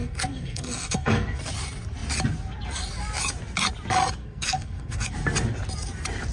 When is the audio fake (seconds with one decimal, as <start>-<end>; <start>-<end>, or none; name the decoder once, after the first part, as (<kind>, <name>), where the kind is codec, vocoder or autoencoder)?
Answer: 0.0-1.4 (codec, SNAC); 4.2-5.1